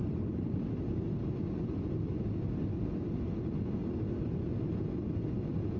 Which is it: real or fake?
real